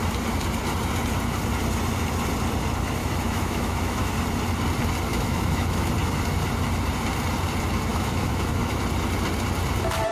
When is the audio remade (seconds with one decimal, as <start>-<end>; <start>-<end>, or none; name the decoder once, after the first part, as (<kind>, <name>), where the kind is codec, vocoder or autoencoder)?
3.0-4.1 (autoencoder, DAC-VAE); 5.1-5.9; 7.9-8.8